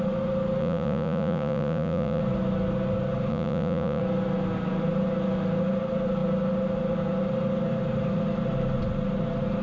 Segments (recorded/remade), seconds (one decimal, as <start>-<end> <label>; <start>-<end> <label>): 0.0-0.6 recorded; 0.6-2.2 remade; 2.2-3.3 recorded; 3.3-4.0 remade; 4.0-9.6 recorded